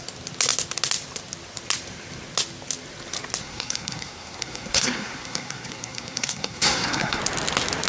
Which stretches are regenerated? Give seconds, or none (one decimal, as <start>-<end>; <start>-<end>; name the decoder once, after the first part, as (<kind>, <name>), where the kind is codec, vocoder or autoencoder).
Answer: 3.4-7.2 (codec, SNAC)